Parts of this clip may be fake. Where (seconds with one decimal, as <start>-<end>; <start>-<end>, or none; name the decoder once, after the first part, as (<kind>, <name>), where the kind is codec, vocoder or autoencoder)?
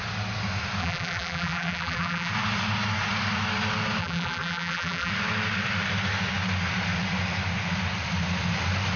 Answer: 0.8-2.3 (vocoder, BigVGAN v2); 4.0-5.1